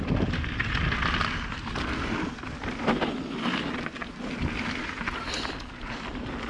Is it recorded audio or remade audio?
recorded